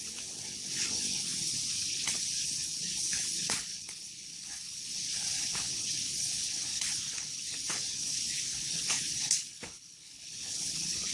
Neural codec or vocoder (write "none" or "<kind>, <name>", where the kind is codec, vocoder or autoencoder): codec, HILCodec